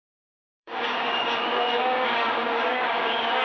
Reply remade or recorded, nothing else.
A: remade